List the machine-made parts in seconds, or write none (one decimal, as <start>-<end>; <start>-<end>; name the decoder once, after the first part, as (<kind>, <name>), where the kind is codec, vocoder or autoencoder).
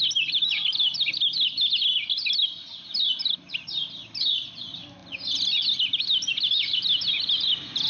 none